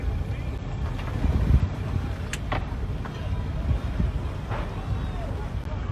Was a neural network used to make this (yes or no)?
no